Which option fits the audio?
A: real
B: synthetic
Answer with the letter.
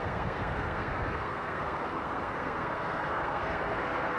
B